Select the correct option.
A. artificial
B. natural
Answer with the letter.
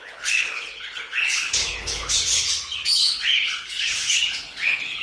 A